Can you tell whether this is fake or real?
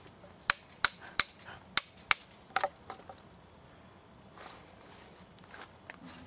real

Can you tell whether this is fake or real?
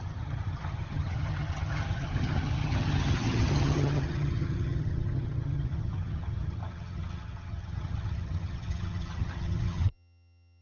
fake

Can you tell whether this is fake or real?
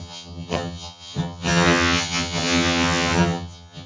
fake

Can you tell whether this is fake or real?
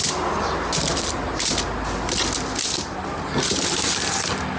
real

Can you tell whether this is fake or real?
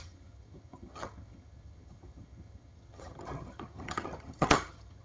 fake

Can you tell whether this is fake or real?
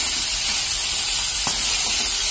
real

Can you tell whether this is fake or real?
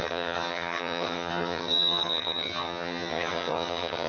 fake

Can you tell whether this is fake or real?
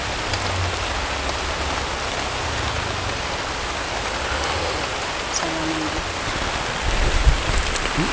real